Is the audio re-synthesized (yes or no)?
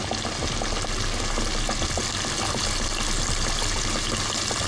no